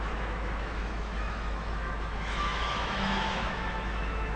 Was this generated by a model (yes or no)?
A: yes